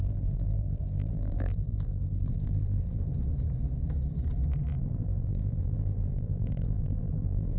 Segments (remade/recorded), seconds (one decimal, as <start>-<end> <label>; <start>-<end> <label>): 0.0-3.1 remade; 3.1-4.8 recorded; 4.8-7.6 remade